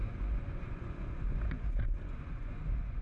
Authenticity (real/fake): fake